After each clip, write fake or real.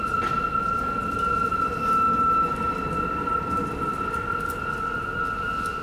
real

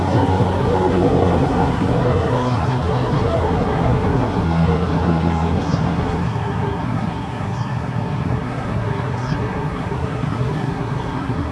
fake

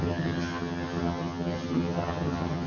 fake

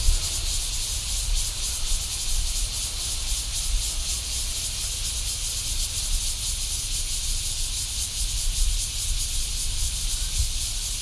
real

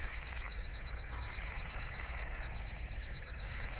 fake